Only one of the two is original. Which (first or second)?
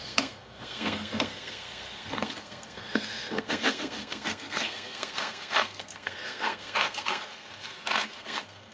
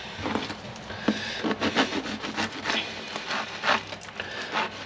second